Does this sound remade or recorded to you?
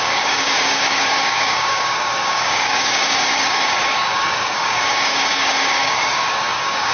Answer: remade